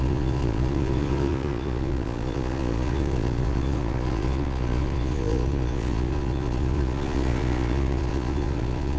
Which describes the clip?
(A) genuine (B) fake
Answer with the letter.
B